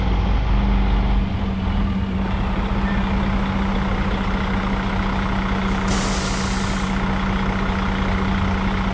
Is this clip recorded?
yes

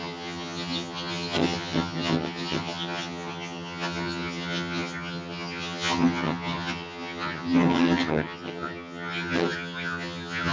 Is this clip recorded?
no